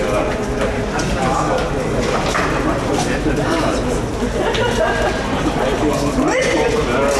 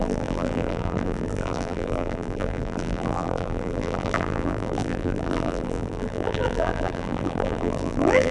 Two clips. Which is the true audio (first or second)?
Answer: first